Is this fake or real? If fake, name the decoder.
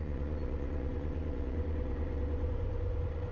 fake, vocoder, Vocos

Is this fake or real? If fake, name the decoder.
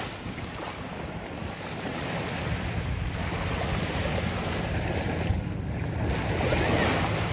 real